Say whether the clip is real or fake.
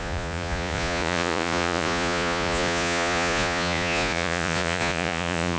fake